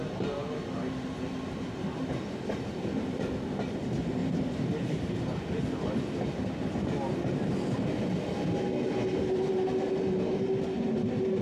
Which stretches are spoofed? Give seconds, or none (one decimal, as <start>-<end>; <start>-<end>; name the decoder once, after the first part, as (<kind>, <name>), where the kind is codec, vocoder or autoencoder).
4.2-5.6 (vocoder, BigVGAN v2)